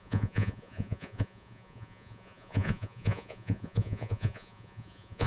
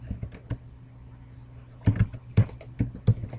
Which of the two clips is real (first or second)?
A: second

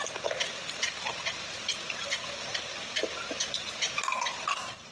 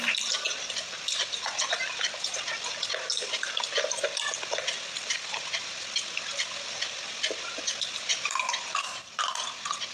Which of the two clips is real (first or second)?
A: first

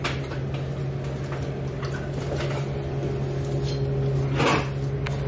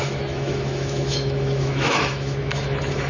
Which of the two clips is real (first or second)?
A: first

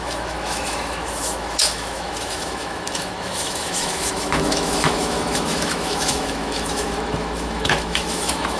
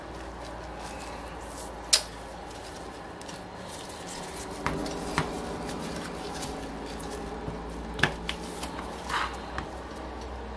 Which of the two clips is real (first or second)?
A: second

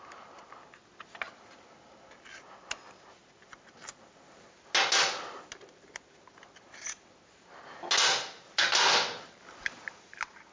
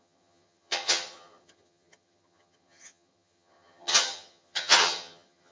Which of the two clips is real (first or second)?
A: first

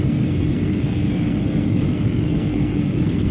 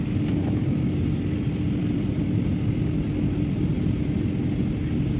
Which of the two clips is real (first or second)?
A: second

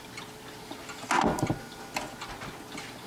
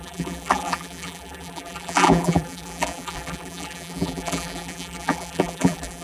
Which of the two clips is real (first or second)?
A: first